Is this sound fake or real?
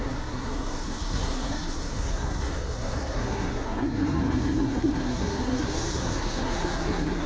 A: fake